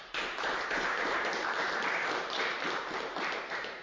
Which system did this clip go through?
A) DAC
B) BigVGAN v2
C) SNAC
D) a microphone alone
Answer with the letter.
B